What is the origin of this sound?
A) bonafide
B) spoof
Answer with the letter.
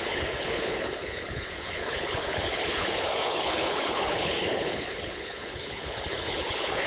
B